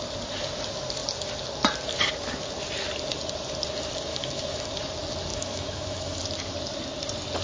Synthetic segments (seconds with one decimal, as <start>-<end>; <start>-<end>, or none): 4.1-4.7; 5.3-6.2